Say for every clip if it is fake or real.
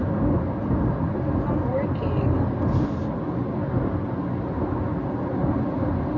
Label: real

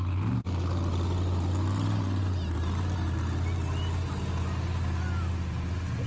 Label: real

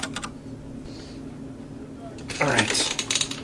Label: real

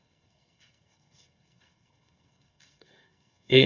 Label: fake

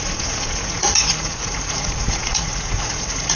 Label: fake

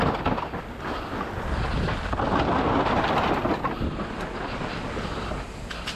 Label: real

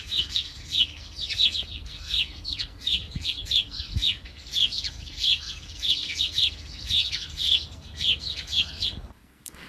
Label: fake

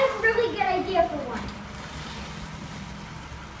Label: real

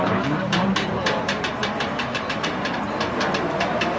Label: fake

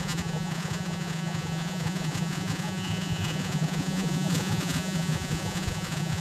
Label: fake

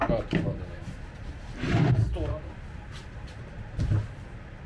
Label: real